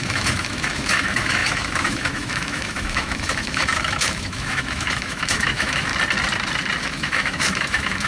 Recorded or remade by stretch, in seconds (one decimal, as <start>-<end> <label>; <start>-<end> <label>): 0.0-5.9 remade; 5.9-6.8 recorded; 6.8-8.1 remade